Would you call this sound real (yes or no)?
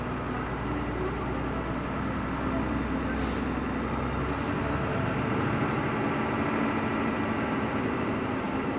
yes